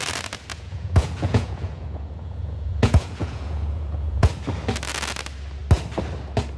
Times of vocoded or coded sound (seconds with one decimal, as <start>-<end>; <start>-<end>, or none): 0.5-4.3